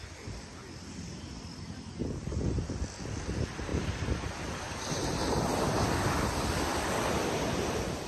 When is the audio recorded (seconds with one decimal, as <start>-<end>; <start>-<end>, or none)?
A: 0.0-8.1